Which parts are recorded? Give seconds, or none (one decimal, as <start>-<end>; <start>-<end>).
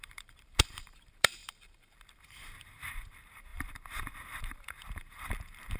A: none